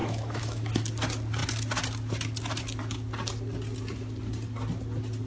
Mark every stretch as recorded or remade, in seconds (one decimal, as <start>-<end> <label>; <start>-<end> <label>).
0.0-0.7 remade; 0.7-5.3 recorded